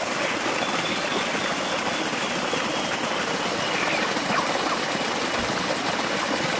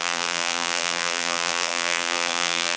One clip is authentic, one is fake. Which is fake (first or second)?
second